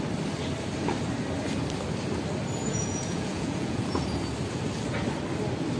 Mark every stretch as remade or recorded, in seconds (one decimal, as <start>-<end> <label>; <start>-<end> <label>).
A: 0.0-2.6 recorded; 2.6-4.0 remade; 4.0-5.8 recorded